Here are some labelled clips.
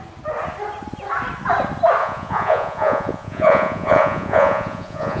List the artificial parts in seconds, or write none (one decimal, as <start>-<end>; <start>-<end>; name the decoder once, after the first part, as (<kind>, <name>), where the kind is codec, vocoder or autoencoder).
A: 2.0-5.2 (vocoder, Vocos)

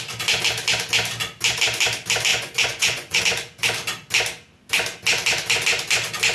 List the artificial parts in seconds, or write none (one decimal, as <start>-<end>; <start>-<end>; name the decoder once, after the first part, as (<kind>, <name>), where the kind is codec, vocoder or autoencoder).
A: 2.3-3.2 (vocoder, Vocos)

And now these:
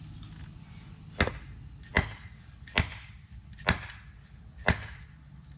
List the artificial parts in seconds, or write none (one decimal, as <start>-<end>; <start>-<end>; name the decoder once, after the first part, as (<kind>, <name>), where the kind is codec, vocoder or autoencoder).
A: none